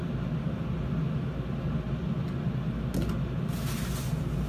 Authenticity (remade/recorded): recorded